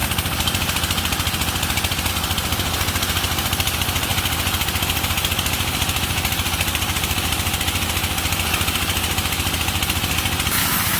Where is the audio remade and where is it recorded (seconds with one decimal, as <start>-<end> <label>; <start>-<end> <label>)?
0.0-11.0 recorded